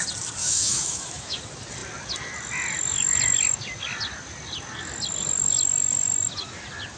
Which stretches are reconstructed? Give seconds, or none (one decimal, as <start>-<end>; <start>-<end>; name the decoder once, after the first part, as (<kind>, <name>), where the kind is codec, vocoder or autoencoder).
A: 0.4-1.4 (autoencoder, DAC-VAE)

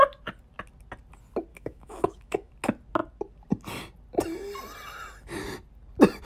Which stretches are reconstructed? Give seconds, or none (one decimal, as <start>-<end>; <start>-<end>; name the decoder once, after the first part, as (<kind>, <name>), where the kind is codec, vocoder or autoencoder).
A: 1.5-2.5 (autoencoder, DAC-VAE)

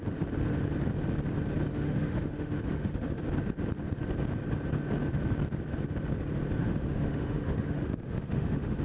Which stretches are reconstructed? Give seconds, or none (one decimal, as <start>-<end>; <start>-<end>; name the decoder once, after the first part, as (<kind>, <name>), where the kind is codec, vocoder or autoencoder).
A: 1.7-3.2 (autoencoder, DAC-VAE); 6.6-8.8

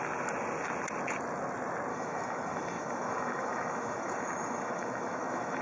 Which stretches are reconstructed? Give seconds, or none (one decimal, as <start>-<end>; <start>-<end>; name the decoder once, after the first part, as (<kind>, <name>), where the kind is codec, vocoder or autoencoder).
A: 1.9-5.6 (autoencoder, DAC-VAE)

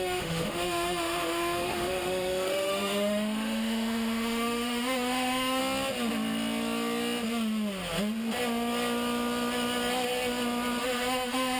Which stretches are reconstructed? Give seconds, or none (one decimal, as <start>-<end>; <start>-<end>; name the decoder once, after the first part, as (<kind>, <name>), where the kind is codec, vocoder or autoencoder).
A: 0.0-5.6 (autoencoder, DAC-VAE); 10.8-11.6

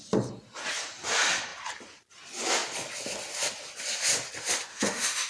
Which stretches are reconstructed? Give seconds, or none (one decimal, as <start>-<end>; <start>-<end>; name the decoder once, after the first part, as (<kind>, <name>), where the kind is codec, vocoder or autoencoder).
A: 4.7-5.3 (autoencoder, DAC-VAE)

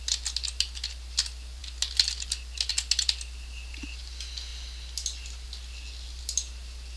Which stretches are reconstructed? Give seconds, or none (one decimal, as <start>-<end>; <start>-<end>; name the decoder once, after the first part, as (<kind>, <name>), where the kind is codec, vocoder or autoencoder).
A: none